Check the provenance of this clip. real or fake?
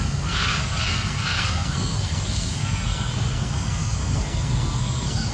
fake